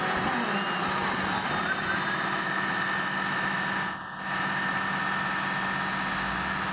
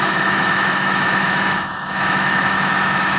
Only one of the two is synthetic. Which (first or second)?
second